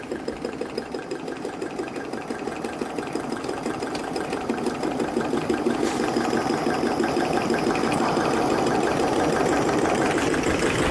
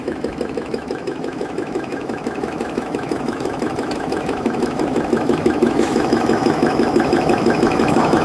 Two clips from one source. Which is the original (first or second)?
first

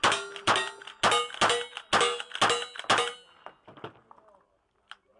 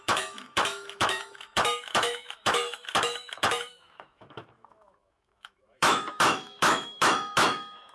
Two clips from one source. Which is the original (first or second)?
first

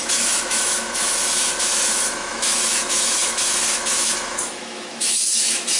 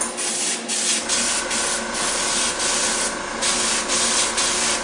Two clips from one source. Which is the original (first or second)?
second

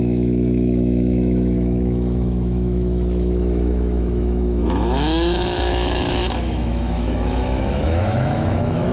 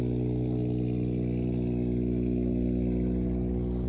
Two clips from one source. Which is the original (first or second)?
second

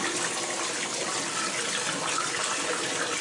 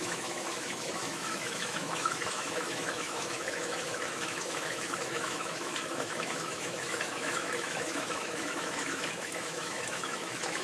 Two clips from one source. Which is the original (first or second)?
first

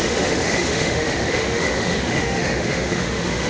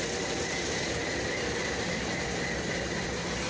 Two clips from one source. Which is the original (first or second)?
second